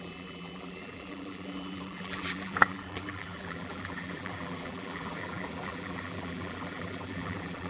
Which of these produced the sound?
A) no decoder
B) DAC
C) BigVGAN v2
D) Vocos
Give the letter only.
C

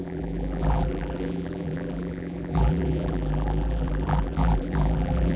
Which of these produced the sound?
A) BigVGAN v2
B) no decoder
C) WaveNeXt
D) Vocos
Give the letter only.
A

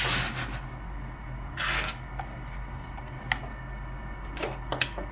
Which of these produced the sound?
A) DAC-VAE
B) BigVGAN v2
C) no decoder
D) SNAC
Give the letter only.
C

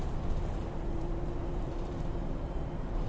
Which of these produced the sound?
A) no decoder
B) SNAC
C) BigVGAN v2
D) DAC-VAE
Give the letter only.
C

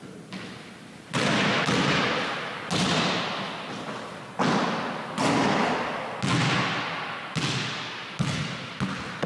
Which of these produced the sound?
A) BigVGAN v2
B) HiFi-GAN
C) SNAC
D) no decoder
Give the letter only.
D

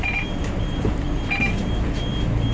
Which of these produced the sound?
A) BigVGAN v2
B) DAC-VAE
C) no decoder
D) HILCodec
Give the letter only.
A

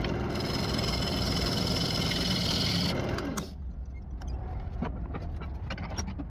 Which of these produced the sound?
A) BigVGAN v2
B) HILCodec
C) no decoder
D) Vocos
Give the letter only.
C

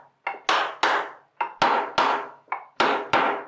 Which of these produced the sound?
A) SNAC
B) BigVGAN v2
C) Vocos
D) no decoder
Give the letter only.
D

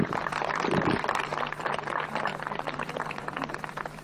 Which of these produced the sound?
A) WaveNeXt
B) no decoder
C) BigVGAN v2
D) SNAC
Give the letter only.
C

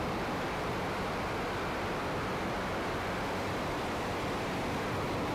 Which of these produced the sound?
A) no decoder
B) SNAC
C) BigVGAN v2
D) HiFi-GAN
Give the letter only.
C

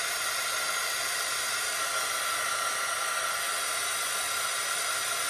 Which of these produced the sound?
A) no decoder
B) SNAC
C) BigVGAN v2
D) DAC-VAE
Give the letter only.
A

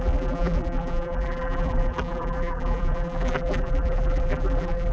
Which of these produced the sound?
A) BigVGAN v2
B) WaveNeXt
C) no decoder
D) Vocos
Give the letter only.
A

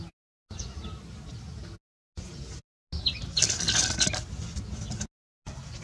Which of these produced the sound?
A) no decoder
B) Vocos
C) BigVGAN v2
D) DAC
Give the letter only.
A